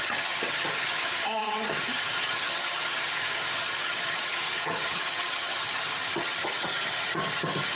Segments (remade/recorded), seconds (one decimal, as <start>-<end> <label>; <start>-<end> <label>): 0.0-7.8 remade